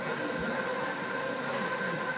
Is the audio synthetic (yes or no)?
no